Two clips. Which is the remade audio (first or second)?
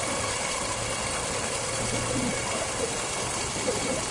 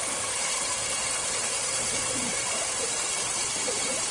second